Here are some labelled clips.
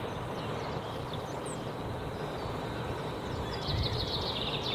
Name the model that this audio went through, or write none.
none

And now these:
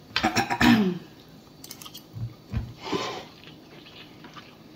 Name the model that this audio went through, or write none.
vocoder, BigVGAN v2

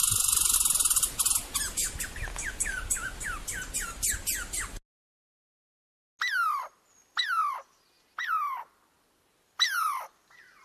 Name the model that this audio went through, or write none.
none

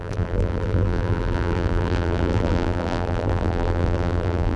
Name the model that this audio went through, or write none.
vocoder, BigVGAN v2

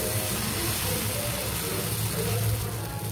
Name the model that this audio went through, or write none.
none